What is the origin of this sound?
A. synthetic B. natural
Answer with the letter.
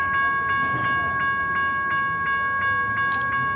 B